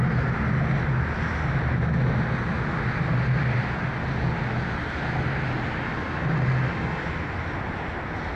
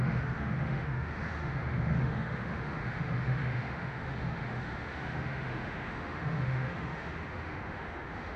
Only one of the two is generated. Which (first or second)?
second